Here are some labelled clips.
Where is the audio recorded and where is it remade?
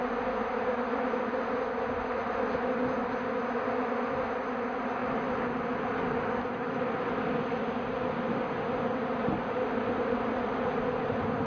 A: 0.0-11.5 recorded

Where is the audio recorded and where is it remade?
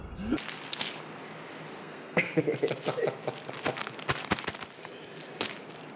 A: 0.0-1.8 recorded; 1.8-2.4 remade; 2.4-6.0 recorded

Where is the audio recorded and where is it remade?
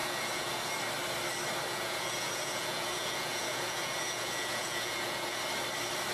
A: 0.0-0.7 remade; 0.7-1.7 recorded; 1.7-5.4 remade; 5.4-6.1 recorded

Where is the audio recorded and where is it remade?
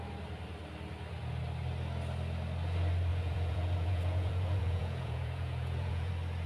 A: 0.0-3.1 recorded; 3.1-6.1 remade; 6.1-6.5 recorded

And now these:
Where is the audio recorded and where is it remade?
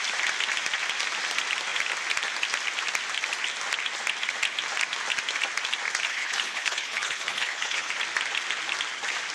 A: 0.0-6.1 recorded; 6.1-7.9 remade; 7.9-9.3 recorded